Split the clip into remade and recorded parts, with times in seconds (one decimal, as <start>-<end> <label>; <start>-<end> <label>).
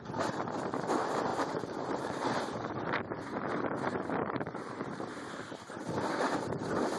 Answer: 0.0-1.3 recorded; 1.3-5.5 remade; 5.5-7.0 recorded